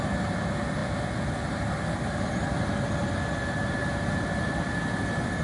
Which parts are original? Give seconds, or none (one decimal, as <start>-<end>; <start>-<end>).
0.0-3.8; 4.8-5.4